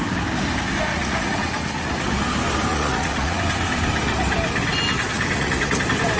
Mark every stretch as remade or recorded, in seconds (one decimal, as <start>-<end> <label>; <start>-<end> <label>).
0.0-0.9 recorded; 0.9-1.9 remade; 1.9-2.7 recorded; 2.7-3.4 remade; 3.4-5.1 recorded; 5.1-5.8 remade; 5.8-6.2 recorded

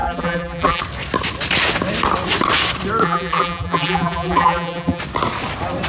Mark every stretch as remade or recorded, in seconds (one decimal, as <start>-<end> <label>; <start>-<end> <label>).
0.0-0.8 remade; 0.8-3.0 recorded; 3.0-5.0 remade; 5.0-5.9 recorded

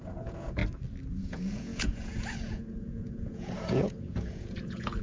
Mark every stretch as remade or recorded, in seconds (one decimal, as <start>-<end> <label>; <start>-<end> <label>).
0.0-0.6 remade; 0.6-1.1 recorded; 1.1-5.0 remade